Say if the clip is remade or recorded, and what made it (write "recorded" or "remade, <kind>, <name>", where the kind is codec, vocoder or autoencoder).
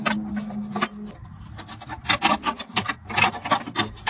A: remade, vocoder, BigVGAN v2